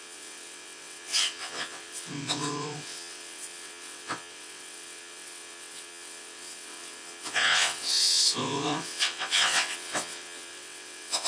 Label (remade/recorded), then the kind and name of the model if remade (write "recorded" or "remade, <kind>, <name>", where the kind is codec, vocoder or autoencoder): remade, vocoder, WaveNeXt